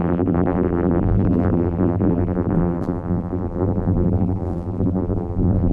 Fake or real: fake